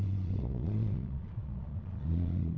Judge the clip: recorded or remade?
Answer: remade